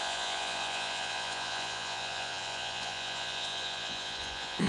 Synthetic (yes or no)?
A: yes